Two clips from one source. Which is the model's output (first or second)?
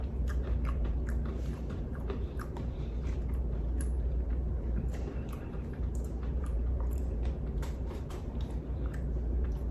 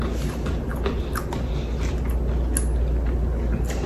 first